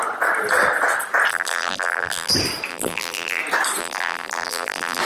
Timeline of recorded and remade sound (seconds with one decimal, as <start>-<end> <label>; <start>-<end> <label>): 0.0-1.3 recorded; 1.3-2.3 remade; 2.3-2.7 recorded; 2.7-3.4 remade; 3.4-3.8 recorded; 3.8-5.0 remade